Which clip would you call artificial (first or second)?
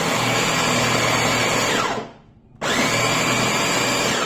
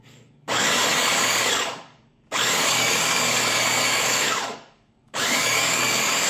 second